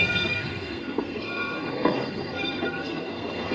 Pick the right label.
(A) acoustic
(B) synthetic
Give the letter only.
B